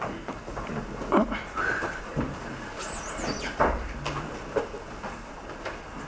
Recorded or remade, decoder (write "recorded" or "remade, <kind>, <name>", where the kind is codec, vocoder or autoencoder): recorded